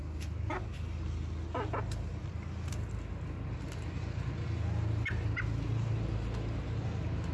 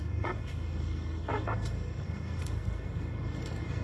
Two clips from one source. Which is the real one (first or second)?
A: first